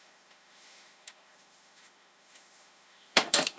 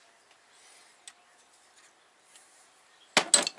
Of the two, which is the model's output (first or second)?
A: first